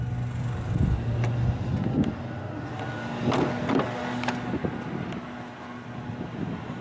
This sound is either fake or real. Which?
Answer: real